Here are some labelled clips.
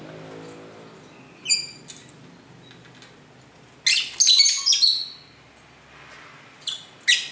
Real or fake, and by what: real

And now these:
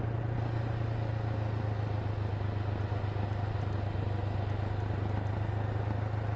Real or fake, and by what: real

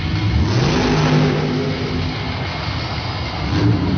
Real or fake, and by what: real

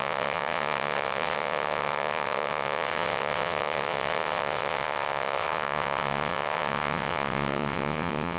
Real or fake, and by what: fake, vocoder, WaveNeXt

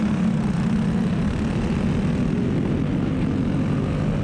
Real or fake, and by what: real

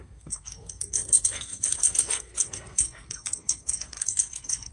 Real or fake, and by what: fake, codec, SNAC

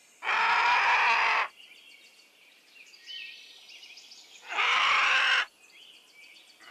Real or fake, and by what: real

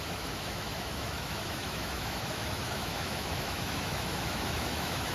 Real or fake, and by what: fake, autoencoder, DAC-VAE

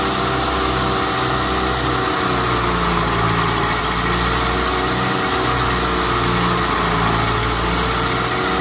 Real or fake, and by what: real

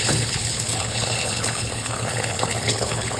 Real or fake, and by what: fake, codec, HILCodec